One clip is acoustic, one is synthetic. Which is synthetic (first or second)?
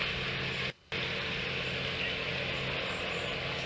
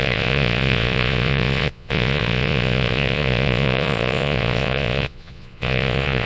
second